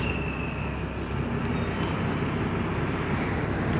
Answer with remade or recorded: recorded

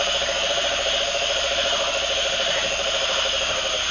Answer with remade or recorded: remade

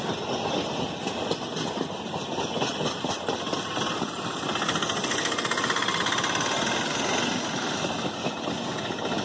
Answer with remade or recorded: recorded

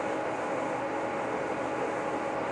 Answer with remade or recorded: recorded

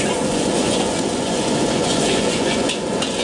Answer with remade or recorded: remade